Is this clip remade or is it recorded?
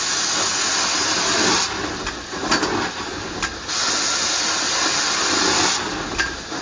recorded